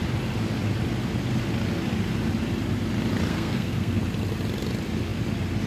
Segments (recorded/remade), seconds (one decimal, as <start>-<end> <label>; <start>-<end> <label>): 0.0-3.3 recorded; 3.3-4.0 remade; 4.0-5.7 recorded